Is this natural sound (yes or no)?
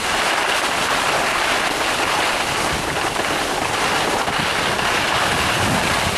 yes